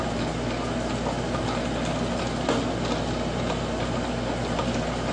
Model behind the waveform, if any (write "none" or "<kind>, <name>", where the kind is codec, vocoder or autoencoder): none